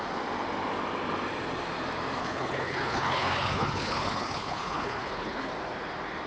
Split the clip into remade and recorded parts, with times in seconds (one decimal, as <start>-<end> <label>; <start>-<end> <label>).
0.0-2.2 recorded; 2.2-5.5 remade; 5.5-6.3 recorded

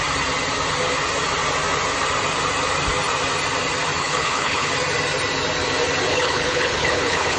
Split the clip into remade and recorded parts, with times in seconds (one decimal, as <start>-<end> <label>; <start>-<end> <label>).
0.0-4.0 recorded; 4.0-4.7 remade; 4.7-6.1 recorded; 6.1-7.4 remade